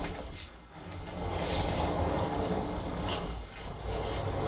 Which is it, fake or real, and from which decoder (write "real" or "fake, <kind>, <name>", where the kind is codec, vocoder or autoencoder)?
fake, codec, DAC